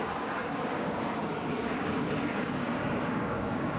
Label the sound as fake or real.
fake